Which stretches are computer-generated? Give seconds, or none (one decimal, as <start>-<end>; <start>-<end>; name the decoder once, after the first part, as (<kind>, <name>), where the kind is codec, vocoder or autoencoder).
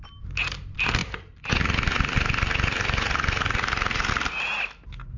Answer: none